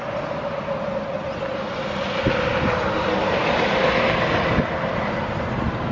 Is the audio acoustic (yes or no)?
yes